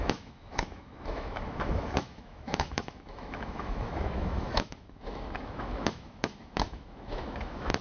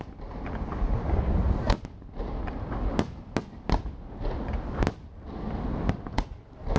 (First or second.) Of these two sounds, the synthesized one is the first